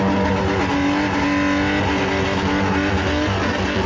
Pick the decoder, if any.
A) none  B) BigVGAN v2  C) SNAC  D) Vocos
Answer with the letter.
A